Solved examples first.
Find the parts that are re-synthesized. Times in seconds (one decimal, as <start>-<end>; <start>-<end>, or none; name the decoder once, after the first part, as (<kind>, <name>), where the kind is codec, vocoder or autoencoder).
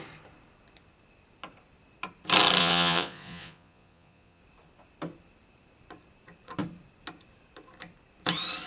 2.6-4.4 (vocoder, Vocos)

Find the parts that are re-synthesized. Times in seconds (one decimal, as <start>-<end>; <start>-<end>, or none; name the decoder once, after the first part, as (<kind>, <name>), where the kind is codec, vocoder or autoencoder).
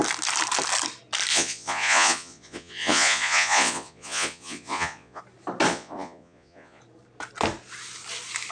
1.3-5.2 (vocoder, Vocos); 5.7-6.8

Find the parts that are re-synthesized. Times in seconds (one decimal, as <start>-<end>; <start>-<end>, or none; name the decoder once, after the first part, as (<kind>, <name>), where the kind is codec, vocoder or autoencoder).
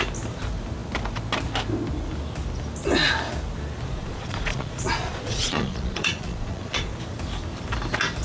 4.0-6.9 (vocoder, Vocos)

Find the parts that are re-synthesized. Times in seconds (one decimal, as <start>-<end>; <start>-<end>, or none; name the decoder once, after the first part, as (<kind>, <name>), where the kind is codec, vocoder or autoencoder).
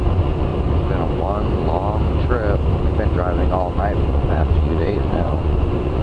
0.0-0.5 (vocoder, Vocos); 4.1-6.0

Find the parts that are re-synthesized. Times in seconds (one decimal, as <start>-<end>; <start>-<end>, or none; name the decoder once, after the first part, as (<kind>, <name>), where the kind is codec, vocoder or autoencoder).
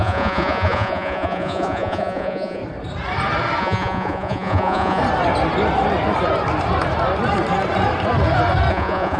0.0-2.6 (vocoder, Vocos); 3.6-5.0; 8.7-9.2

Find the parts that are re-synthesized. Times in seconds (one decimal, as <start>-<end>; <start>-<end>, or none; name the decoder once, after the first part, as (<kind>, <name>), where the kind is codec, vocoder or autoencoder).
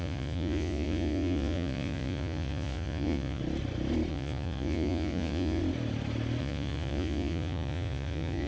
0.0-3.4 (vocoder, Vocos); 4.1-5.6; 6.4-8.5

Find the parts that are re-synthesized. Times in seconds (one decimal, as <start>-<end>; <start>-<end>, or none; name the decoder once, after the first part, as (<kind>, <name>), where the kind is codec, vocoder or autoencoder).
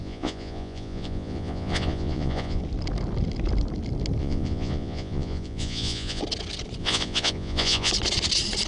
0.0-2.6 (vocoder, Vocos); 4.2-6.2; 6.8-7.9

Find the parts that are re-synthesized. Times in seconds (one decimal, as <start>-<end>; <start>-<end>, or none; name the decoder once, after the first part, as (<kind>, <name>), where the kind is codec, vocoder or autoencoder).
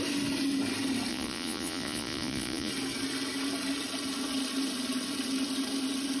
1.1-2.7 (vocoder, Vocos)